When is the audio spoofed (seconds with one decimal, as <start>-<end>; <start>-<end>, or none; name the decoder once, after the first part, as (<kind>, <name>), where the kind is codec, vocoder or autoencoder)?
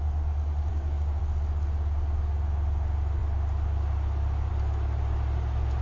0.7-1.2 (codec, DAC)